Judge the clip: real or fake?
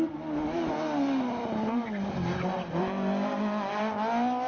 real